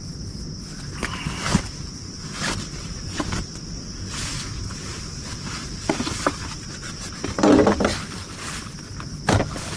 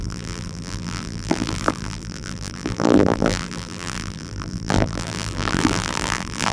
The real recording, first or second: first